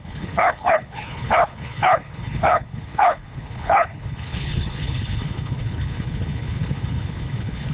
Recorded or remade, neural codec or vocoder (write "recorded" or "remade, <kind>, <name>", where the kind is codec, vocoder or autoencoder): remade, codec, HILCodec